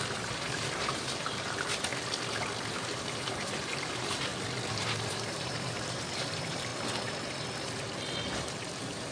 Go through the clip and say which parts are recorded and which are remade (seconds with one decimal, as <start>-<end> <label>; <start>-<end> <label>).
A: 0.0-1.9 remade; 1.9-2.7 recorded; 2.7-4.3 remade; 4.3-5.1 recorded; 5.1-6.7 remade; 6.7-8.4 recorded; 8.4-9.1 remade